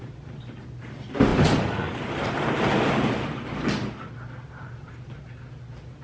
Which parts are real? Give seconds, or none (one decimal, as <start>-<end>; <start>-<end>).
0.0-6.0

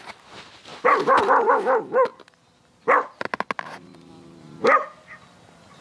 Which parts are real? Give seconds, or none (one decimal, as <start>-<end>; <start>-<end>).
0.0-5.8